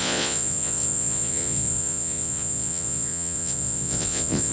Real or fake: fake